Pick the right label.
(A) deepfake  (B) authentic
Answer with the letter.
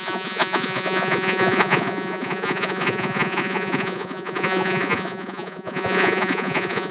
A